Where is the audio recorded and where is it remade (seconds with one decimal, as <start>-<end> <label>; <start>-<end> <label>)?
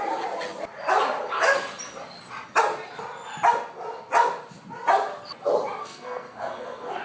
0.0-5.8 recorded; 5.8-7.0 remade